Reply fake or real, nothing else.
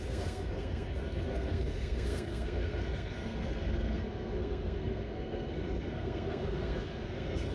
fake